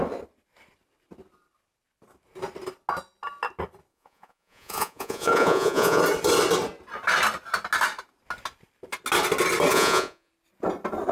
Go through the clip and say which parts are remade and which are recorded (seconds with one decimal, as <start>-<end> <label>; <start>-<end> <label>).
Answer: 0.0-3.9 recorded; 3.9-6.0 remade; 6.0-9.7 recorded; 9.7-10.3 remade; 10.3-11.1 recorded